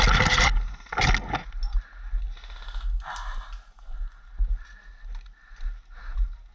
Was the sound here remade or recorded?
recorded